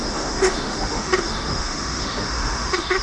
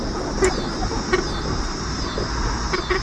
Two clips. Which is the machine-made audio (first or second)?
first